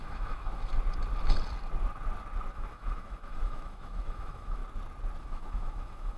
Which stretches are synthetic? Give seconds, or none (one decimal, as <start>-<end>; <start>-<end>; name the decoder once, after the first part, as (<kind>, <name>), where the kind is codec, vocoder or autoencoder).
0.0-0.7 (autoencoder, DAC-VAE); 2.5-4.6; 5.2-6.2